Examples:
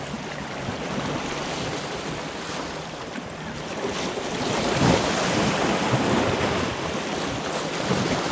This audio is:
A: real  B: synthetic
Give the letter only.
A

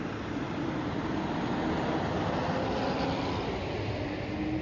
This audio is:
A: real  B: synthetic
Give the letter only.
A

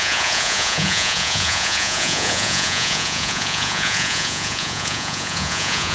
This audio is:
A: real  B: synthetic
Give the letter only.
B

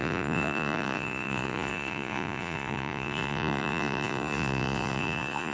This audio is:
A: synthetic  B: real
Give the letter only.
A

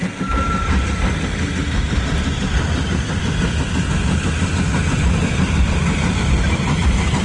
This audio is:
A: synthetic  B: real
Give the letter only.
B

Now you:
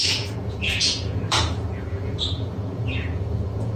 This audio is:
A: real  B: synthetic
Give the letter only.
B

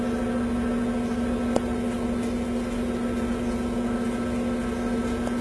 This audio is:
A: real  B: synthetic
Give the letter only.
A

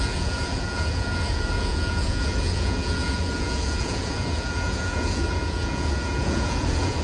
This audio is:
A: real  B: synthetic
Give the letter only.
B